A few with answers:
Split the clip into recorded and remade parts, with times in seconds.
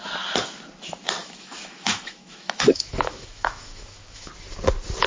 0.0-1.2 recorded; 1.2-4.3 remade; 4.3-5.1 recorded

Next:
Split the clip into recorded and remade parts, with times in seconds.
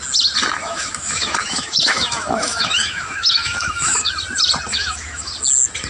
0.0-0.6 recorded; 0.6-4.1 remade; 4.1-4.7 recorded; 4.7-5.3 remade; 5.3-5.9 recorded